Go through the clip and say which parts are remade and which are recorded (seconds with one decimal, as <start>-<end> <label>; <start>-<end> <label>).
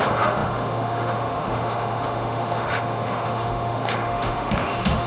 0.0-5.1 remade